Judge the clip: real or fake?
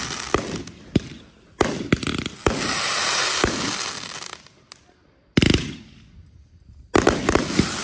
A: real